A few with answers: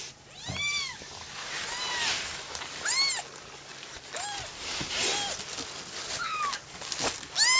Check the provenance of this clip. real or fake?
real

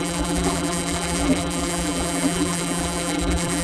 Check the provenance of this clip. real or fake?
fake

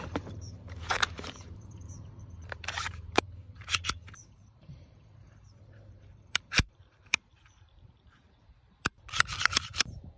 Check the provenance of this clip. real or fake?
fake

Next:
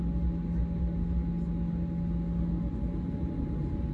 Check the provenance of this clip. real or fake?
real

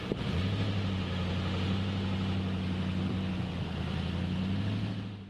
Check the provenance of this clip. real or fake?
real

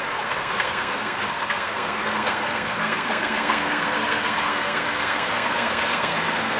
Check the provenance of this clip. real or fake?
fake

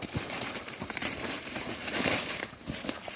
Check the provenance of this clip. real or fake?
fake